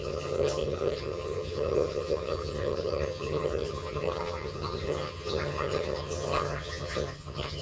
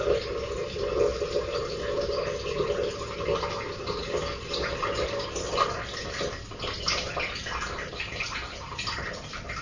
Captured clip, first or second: second